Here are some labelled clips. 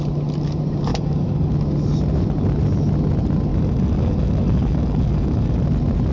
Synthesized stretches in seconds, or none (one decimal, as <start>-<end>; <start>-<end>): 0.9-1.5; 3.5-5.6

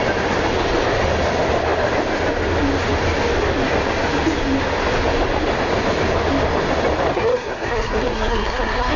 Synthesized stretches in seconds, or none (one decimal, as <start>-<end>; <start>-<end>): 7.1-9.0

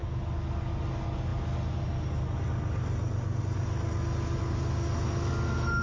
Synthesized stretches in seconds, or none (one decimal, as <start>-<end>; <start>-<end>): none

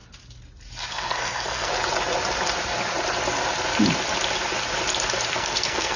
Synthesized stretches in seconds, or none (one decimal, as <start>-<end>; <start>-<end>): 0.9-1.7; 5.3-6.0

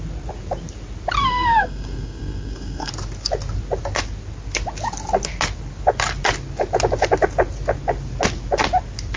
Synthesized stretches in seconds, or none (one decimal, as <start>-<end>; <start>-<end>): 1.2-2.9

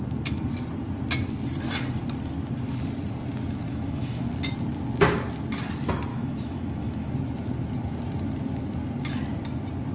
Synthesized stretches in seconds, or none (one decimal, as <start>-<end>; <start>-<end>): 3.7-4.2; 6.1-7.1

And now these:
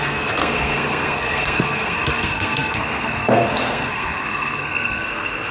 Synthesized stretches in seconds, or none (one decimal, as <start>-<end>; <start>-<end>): 0.0-5.5

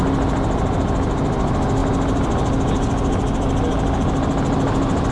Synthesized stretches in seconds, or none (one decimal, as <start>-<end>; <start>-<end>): none